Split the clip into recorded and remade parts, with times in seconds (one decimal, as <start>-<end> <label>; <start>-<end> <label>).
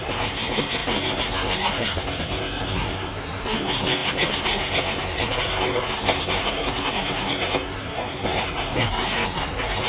0.0-9.9 remade